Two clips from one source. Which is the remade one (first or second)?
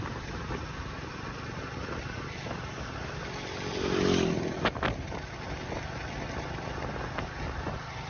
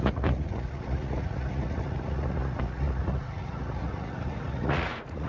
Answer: second